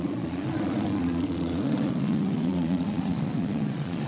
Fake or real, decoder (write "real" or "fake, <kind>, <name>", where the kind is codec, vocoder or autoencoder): fake, vocoder, Vocos